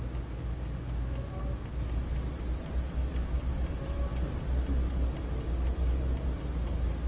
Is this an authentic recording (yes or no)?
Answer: yes